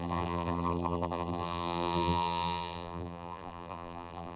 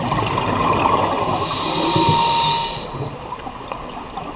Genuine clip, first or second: second